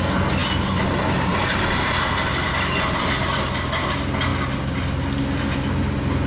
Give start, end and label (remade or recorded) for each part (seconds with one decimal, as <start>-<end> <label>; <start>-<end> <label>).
0.0-6.3 recorded